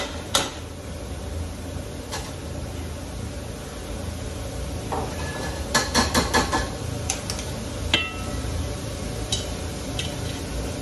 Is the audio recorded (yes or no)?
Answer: yes